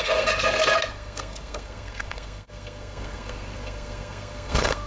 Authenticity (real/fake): fake